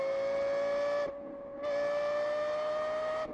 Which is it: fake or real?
real